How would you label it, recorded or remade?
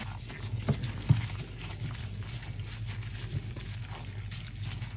recorded